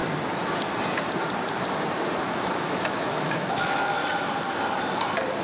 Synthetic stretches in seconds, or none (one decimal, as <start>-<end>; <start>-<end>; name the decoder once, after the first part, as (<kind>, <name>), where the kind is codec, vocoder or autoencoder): 2.2-4.0 (autoencoder, DAC-VAE)